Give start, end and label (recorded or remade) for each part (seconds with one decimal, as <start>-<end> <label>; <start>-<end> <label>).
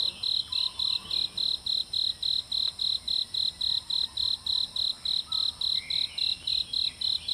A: 0.0-4.5 recorded; 4.5-6.5 remade; 6.5-7.3 recorded